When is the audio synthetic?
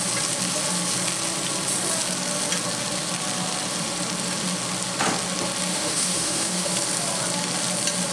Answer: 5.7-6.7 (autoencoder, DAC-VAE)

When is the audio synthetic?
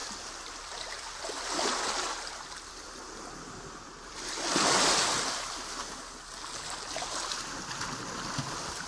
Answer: none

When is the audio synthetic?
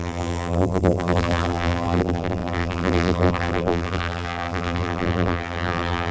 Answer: 0.0-6.1 (vocoder, BigVGAN v2)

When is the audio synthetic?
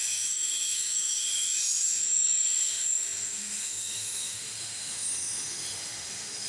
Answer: 0.0-6.5 (autoencoder, DAC-VAE)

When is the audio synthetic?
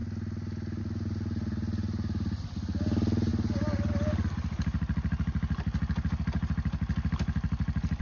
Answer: none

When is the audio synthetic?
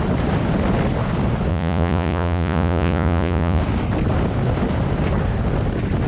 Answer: 1.5-3.6 (vocoder, Vocos)